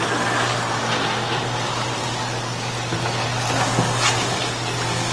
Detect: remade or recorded recorded